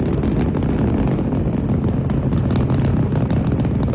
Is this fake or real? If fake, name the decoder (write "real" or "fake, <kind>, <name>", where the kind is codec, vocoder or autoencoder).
real